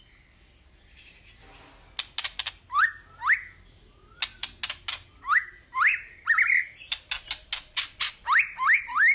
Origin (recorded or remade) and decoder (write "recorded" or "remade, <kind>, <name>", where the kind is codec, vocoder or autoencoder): recorded